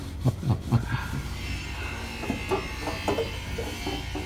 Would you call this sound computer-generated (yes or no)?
no